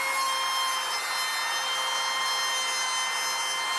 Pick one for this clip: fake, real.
real